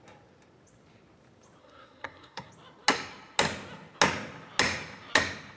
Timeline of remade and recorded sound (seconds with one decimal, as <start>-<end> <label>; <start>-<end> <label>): 0.0-1.6 recorded; 1.6-2.5 remade; 2.5-5.6 recorded